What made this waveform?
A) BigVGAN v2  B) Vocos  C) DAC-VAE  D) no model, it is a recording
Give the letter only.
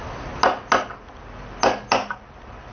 D